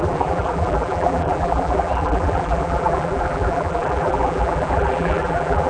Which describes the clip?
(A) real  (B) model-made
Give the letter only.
B